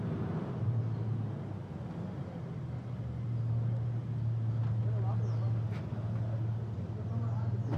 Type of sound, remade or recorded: recorded